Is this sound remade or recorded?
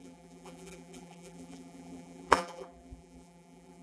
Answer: remade